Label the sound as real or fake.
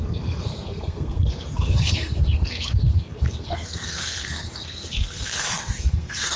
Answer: fake